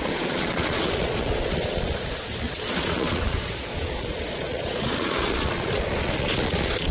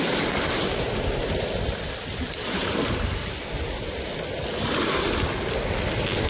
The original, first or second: second